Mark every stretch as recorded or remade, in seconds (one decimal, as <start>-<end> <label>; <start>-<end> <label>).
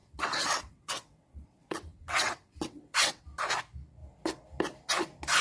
0.0-3.2 remade; 3.2-5.4 recorded